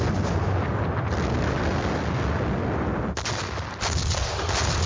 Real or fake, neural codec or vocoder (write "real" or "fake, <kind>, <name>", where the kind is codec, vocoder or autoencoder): real